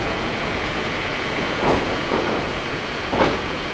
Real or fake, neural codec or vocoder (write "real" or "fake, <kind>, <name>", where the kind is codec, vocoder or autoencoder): fake, vocoder, Vocos